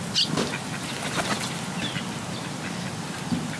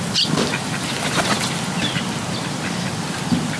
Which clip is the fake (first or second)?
second